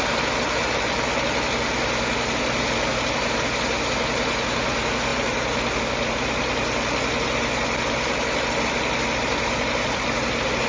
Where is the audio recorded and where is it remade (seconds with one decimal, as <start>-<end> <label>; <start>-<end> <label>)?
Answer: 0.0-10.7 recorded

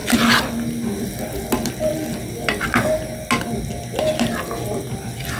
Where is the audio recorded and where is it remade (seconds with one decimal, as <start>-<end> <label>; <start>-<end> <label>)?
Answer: 0.0-5.4 recorded

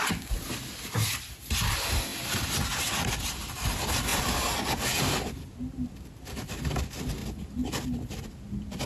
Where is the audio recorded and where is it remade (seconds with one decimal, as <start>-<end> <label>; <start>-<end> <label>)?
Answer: 0.0-8.9 recorded

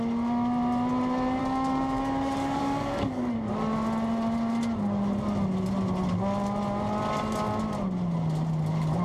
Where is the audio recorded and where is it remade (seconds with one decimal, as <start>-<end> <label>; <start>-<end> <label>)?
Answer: 0.0-1.4 recorded; 1.4-3.3 remade; 3.3-9.0 recorded

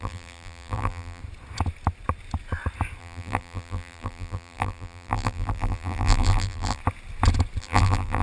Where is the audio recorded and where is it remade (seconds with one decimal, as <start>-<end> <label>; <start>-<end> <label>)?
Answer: 0.0-1.2 remade; 1.2-3.0 recorded; 3.0-6.8 remade; 6.8-7.6 recorded; 7.6-8.2 remade

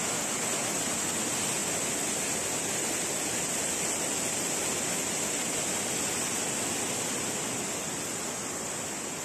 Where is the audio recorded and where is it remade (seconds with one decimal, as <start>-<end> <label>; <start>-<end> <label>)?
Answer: 0.0-9.2 recorded

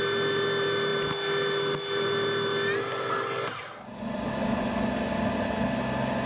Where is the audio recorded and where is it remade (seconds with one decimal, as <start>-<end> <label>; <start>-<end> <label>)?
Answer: 0.0-6.3 recorded

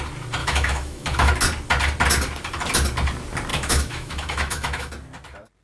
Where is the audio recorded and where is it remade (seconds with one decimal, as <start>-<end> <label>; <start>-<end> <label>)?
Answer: 0.0-0.4 recorded; 0.4-1.3 remade; 1.3-3.5 recorded; 3.5-4.9 remade; 4.9-5.6 recorded